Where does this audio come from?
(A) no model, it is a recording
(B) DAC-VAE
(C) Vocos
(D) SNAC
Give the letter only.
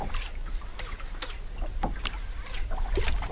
A